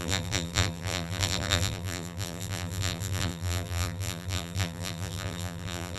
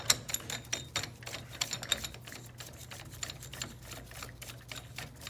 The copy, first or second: first